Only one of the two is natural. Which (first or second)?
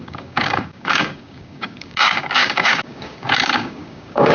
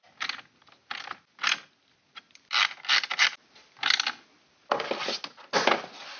second